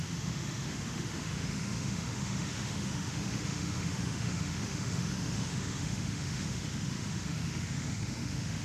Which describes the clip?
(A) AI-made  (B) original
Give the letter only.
A